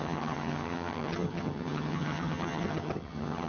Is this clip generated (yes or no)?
yes